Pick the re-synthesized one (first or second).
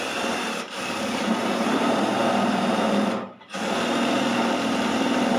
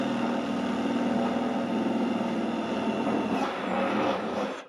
first